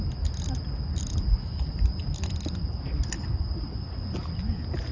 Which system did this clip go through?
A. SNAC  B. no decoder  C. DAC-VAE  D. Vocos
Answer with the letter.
B